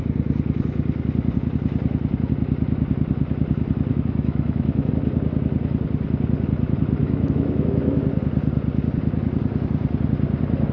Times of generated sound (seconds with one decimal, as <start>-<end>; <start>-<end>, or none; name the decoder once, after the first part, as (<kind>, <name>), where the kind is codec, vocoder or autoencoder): 3.9-4.9 (autoencoder, DAC-VAE); 7.0-8.0